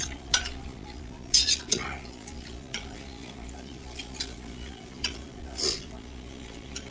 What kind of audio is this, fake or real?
fake